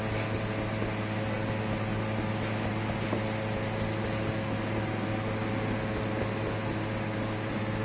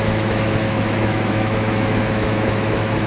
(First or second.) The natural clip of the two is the first